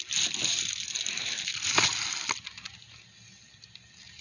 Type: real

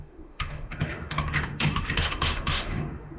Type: fake